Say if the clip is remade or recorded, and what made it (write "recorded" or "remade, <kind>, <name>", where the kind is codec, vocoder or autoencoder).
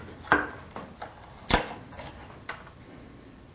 recorded